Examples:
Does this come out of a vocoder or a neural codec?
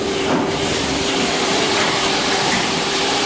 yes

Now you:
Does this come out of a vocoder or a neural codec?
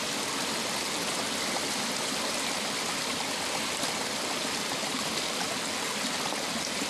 no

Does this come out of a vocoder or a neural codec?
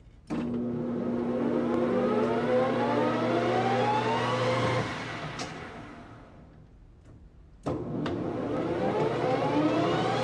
no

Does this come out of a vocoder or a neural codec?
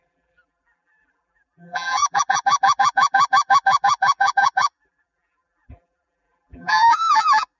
yes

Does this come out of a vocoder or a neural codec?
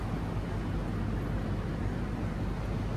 no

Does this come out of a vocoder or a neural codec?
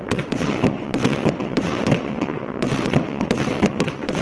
yes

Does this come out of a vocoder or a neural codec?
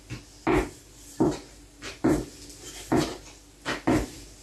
no